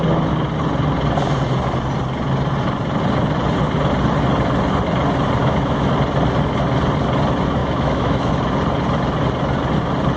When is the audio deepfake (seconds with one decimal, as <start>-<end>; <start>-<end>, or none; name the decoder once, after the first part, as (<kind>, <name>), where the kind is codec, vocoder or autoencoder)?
5.4-5.9 (autoencoder, DAC-VAE); 7.6-8.3